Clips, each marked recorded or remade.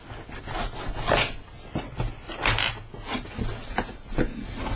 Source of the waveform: recorded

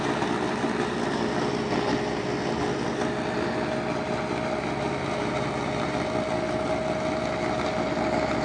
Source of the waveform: recorded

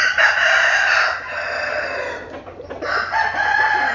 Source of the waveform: recorded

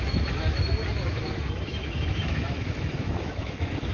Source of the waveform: remade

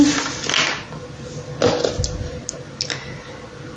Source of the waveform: recorded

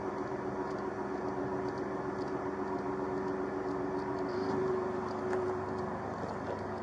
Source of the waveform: recorded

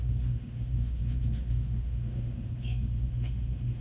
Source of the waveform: remade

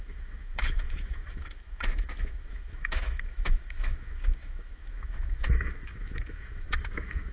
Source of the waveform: remade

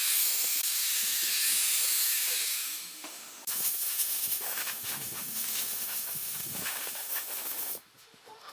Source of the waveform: remade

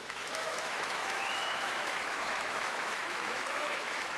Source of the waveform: remade